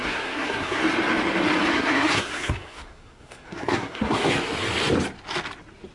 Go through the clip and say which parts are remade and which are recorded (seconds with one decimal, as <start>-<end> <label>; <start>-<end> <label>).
0.0-0.8 remade; 0.8-1.7 recorded; 1.7-4.3 remade; 4.3-5.9 recorded